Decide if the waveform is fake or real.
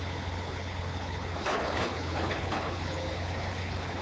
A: fake